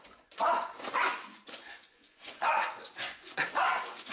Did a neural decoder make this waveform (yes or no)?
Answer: yes